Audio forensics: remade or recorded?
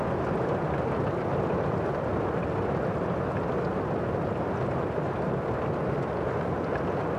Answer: recorded